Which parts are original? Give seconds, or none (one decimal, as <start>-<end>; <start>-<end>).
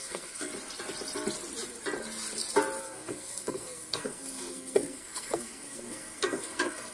0.5-2.8